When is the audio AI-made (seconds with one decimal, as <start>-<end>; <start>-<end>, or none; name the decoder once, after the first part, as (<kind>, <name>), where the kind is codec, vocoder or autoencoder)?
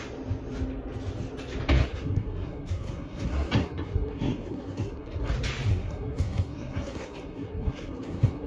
1.8-5.3 (codec, SNAC); 5.7-8.5